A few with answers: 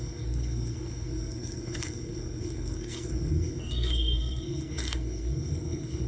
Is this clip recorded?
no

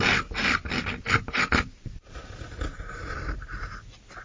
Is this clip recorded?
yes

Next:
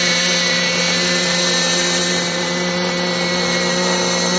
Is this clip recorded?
yes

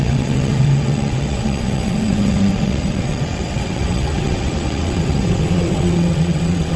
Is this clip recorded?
no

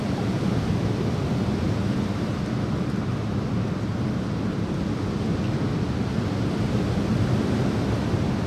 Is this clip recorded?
yes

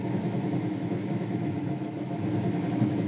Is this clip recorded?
no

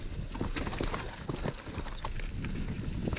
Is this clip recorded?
yes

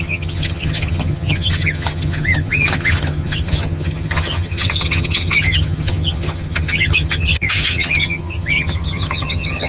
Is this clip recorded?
no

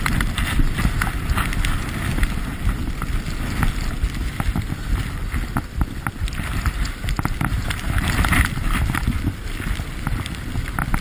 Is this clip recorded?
yes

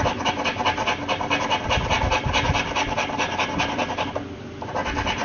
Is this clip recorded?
yes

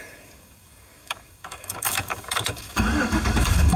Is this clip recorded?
no